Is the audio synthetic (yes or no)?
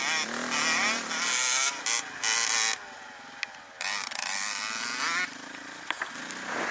no